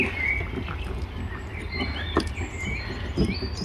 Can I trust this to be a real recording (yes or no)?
yes